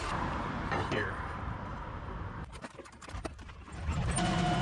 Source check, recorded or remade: remade